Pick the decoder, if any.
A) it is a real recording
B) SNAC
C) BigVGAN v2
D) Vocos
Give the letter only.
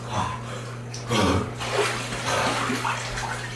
A